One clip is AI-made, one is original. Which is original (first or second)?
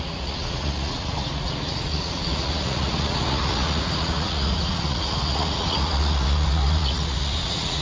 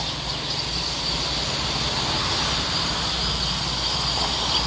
second